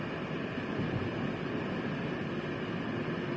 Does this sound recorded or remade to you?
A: recorded